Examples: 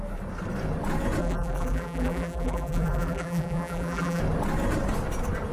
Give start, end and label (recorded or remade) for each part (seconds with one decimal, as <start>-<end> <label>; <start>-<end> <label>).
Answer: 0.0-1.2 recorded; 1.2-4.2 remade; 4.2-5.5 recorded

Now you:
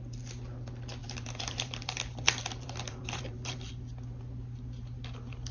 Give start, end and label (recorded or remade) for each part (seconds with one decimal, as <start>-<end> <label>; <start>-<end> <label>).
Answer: 0.0-1.0 recorded; 1.0-3.7 remade; 3.7-5.5 recorded

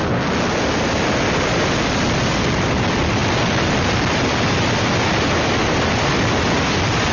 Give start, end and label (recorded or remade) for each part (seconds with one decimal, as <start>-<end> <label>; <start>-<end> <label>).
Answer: 0.0-7.1 recorded

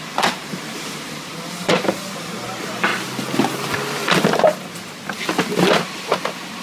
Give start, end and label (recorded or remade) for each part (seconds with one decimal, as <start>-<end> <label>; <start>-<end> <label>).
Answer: 0.0-2.9 remade; 2.9-6.6 recorded

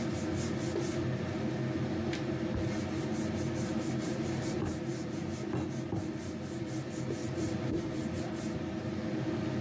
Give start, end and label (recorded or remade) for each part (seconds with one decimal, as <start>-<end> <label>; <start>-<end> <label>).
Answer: 0.0-3.7 recorded; 3.7-5.3 remade; 5.3-7.2 recorded; 7.2-8.9 remade; 8.9-9.6 recorded